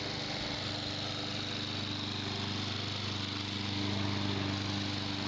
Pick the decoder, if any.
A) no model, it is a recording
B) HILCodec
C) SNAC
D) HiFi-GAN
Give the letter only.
A